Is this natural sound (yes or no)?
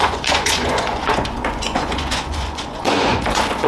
no